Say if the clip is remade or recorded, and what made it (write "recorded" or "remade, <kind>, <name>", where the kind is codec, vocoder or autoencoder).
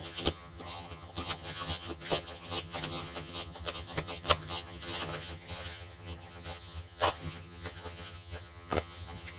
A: remade, vocoder, HiFi-GAN